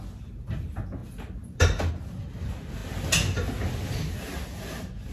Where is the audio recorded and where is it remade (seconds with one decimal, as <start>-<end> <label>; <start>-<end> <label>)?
0.0-5.1 recorded